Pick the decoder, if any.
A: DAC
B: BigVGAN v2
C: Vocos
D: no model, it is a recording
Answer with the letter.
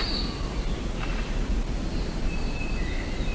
D